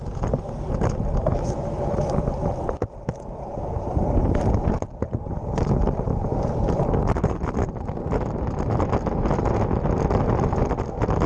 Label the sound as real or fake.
real